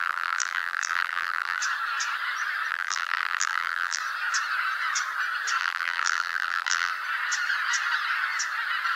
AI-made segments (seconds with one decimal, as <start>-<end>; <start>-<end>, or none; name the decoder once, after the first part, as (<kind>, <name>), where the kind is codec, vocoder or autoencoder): 0.0-1.6 (vocoder, BigVGAN v2); 2.7-4.0; 5.6-6.9